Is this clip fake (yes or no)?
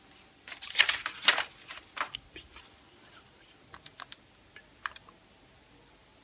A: no